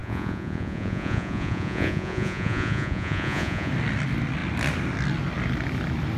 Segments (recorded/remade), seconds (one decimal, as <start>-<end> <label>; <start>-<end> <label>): 0.0-3.7 remade; 3.7-6.2 recorded